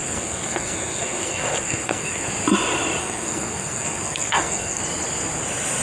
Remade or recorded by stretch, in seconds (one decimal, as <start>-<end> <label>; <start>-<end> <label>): 0.0-2.3 remade; 2.3-3.0 recorded; 3.0-4.8 remade; 4.8-5.8 recorded